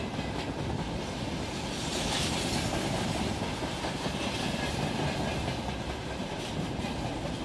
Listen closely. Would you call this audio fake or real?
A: real